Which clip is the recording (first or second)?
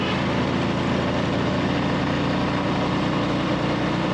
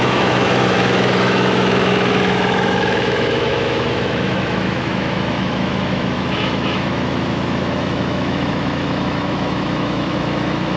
first